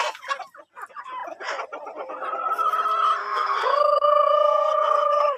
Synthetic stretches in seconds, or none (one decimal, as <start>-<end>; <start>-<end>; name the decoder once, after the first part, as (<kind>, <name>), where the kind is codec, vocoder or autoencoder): 3.2-5.4 (codec, SNAC)